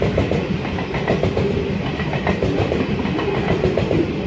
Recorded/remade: recorded